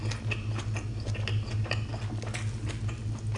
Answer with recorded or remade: recorded